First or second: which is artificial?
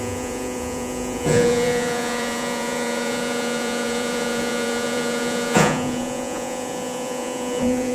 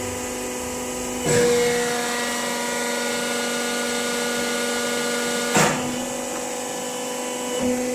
first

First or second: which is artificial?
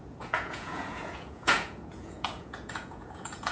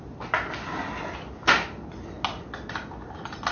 first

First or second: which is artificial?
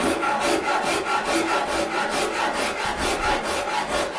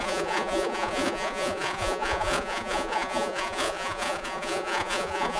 second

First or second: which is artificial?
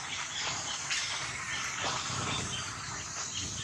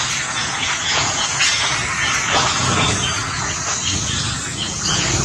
second